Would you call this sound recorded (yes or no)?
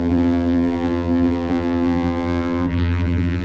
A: no